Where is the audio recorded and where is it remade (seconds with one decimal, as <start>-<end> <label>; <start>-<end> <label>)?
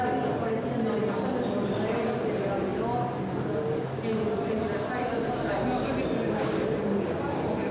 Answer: 0.0-7.7 recorded